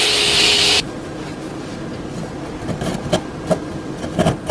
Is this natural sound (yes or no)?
yes